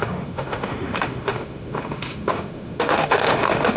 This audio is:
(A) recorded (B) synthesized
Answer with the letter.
B